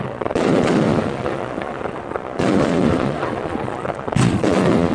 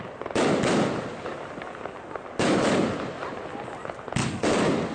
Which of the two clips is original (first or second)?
second